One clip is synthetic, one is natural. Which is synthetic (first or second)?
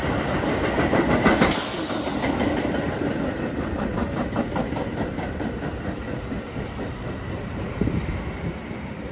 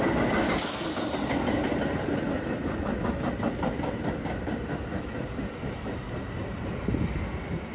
first